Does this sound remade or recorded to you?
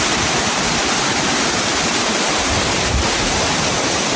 remade